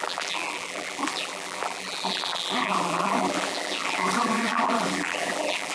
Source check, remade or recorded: remade